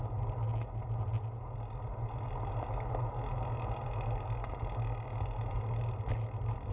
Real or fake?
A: real